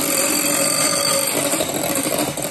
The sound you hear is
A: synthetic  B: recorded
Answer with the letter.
A